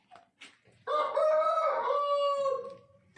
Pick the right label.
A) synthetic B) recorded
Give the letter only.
B